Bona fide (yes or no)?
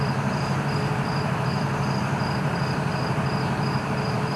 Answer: no